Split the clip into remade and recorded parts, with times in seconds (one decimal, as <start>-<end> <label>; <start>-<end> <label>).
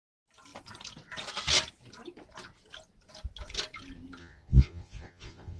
0.0-4.2 recorded; 4.2-5.6 remade